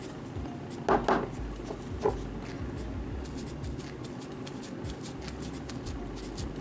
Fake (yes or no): no